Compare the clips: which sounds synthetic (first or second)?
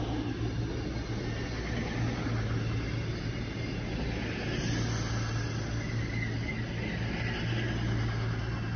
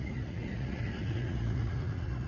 second